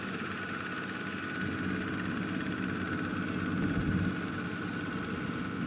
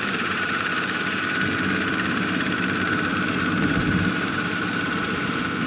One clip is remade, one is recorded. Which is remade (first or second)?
second